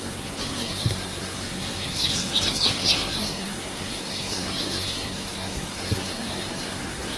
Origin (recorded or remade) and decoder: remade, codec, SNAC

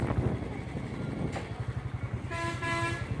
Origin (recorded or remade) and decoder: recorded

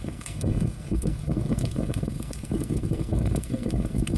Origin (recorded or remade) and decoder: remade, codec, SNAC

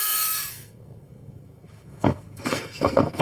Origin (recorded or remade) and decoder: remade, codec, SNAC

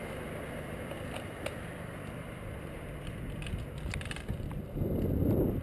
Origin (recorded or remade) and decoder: recorded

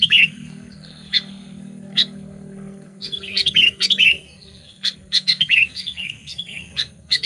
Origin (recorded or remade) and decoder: remade, codec, SNAC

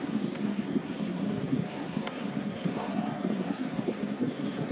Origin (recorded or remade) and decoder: remade, codec, SNAC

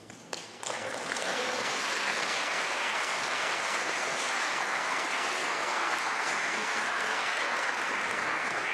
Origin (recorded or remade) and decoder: remade, codec, SNAC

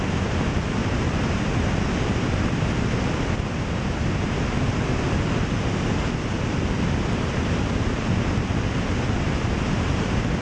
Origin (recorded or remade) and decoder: recorded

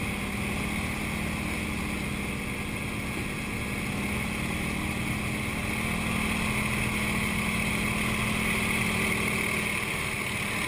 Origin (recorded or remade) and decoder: recorded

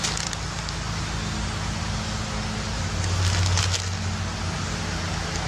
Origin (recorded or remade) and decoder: recorded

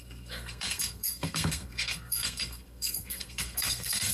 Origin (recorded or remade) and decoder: remade, codec, SNAC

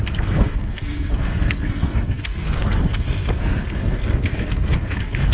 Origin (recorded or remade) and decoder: remade, codec, SNAC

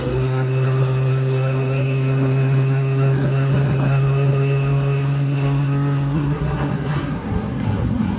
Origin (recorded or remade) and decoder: remade, codec, SNAC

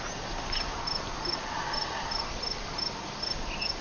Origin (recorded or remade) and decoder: recorded